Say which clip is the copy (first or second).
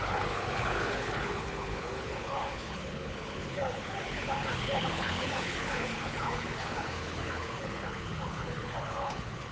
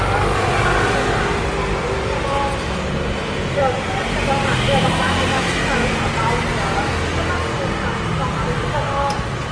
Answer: first